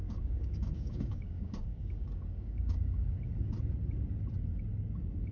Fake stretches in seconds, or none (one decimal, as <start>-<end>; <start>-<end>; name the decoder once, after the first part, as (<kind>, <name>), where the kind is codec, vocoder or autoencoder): 0.0-3.2 (codec, DAC)